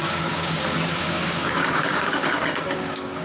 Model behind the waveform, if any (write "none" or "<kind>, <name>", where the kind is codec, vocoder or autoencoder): codec, DAC